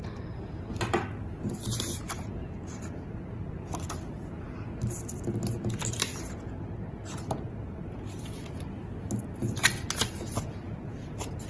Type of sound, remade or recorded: recorded